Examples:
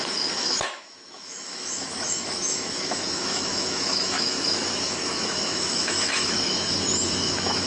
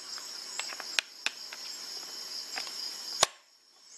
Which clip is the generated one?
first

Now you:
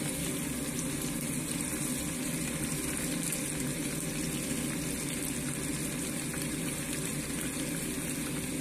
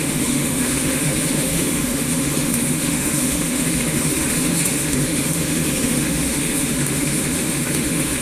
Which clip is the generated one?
second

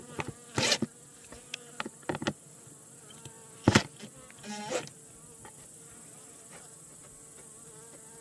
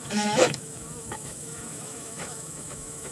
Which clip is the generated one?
second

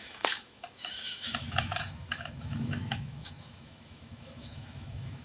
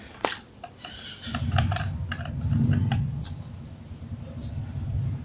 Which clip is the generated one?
first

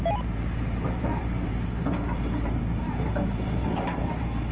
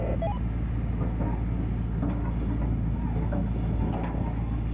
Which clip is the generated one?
first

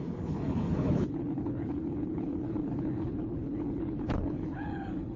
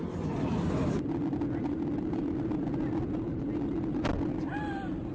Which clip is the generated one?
first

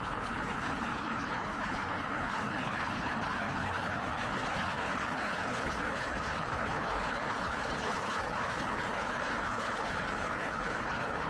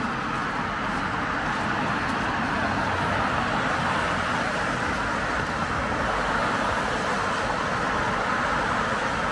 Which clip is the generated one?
first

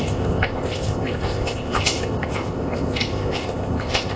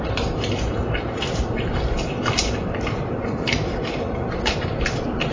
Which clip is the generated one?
first